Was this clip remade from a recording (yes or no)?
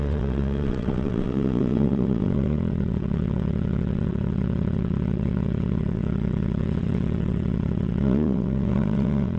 yes